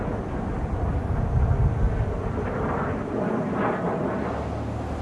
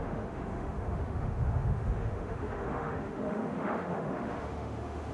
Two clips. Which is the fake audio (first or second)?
second